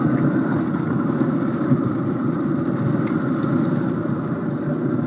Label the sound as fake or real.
real